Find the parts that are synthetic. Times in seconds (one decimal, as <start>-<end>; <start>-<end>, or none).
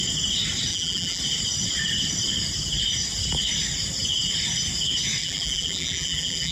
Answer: 0.7-1.2; 5.2-6.5